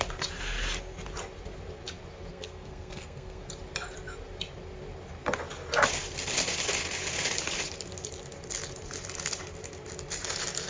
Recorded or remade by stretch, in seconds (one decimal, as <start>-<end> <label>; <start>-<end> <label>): 0.0-2.3 recorded; 2.3-3.4 remade; 3.4-10.7 recorded